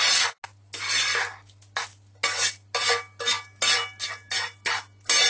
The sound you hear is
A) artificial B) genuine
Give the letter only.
B